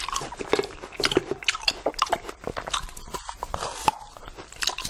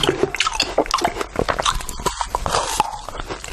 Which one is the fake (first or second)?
first